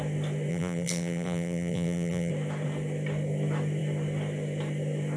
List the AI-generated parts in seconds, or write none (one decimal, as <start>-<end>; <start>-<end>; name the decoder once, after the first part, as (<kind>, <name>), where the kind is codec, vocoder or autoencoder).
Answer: 0.5-2.3 (vocoder, BigVGAN v2)